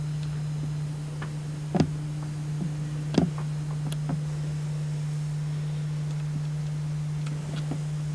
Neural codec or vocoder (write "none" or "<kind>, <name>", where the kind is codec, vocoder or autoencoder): none